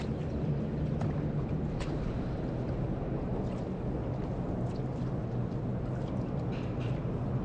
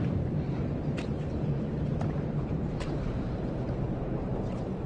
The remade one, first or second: second